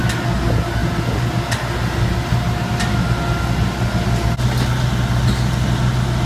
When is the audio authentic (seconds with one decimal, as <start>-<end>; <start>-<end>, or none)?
0.0-6.3